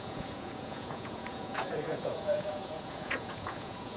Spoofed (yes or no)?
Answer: yes